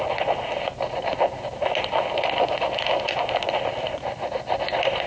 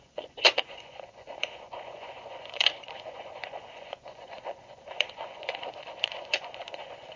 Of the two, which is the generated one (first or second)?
second